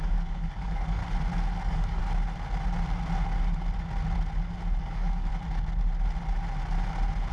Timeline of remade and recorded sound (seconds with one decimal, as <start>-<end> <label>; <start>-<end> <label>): 0.0-1.0 remade; 1.0-1.6 recorded; 1.6-2.0 remade; 2.0-4.8 recorded; 4.8-5.3 remade; 5.3-7.3 recorded